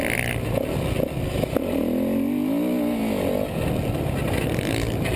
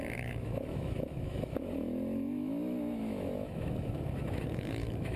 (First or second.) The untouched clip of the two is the first